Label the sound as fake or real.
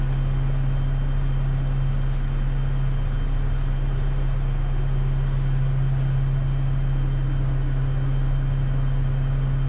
real